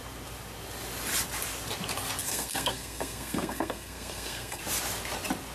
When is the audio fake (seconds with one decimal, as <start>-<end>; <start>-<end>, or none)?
2.2-4.6